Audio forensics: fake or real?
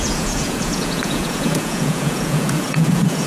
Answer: fake